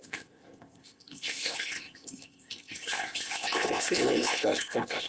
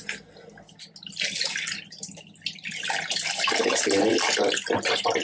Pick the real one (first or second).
second